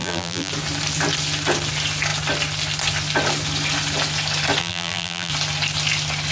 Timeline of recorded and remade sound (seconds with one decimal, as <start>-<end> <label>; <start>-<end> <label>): 0.0-0.5 remade; 0.5-4.6 recorded; 4.6-5.3 remade; 5.3-6.3 recorded